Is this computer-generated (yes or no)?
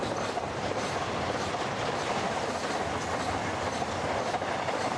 yes